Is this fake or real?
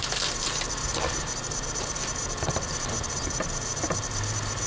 fake